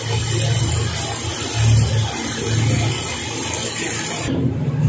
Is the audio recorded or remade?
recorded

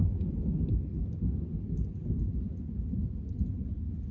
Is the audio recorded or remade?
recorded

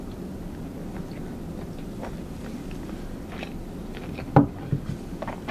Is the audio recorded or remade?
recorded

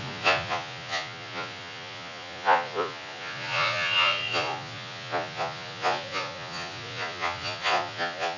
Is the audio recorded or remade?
remade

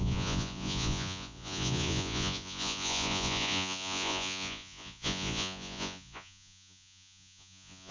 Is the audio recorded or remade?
remade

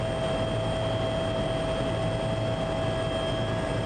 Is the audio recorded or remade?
recorded